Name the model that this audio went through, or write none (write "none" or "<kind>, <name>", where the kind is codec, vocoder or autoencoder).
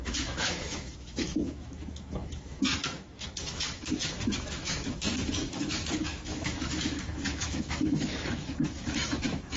autoencoder, DAC-VAE